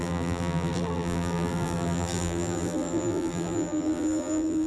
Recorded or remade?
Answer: remade